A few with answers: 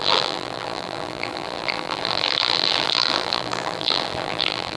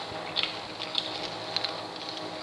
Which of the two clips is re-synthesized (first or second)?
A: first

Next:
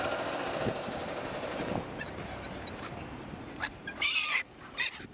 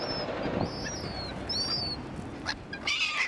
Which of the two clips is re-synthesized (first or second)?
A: first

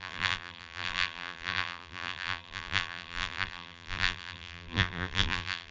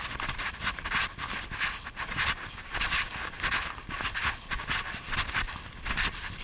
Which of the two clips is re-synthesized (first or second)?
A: first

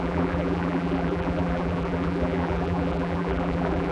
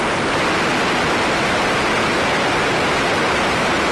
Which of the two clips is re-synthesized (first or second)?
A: first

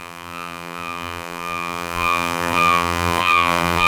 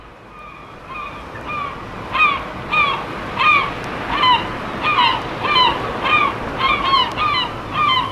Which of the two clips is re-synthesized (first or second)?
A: first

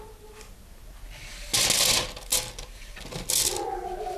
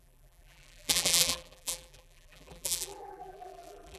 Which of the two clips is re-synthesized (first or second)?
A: second